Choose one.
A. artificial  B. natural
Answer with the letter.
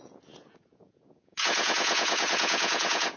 A